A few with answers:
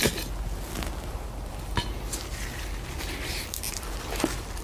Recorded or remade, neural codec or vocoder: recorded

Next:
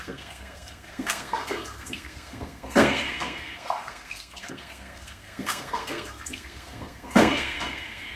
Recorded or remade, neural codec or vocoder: remade, codec, SNAC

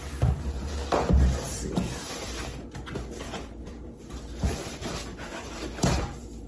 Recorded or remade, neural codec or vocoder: remade, vocoder, BigVGAN v2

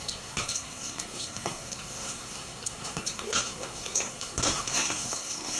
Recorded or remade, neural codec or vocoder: remade, codec, SNAC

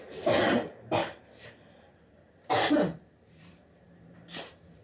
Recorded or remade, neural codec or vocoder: remade, vocoder, BigVGAN v2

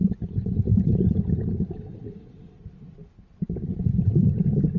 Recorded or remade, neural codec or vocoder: recorded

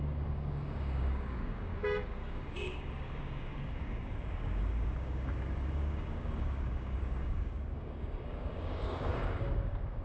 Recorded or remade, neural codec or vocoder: remade, codec, DAC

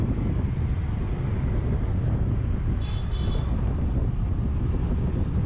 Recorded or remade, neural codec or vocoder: recorded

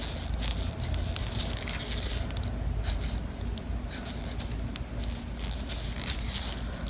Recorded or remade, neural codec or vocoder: recorded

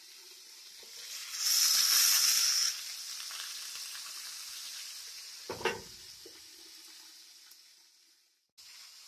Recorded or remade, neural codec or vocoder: recorded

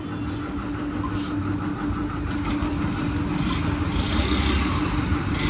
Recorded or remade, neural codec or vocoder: recorded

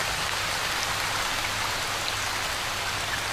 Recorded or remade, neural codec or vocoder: recorded